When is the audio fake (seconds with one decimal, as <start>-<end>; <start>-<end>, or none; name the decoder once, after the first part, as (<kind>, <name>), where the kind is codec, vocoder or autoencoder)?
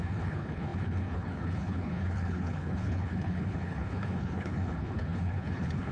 0.0-5.9 (codec, HILCodec)